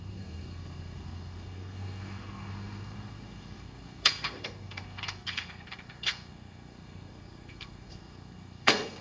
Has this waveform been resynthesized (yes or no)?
yes